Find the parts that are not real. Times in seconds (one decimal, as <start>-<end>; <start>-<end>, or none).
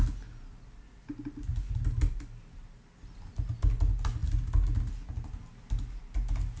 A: none